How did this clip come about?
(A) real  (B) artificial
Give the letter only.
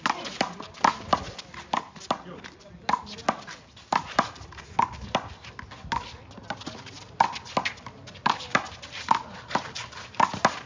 A